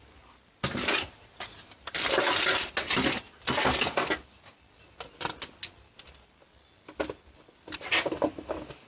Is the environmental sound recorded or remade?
recorded